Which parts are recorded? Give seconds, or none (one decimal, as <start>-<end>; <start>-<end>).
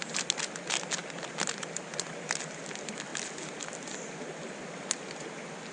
0.0-5.7